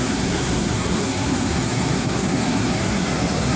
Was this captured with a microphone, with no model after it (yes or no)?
no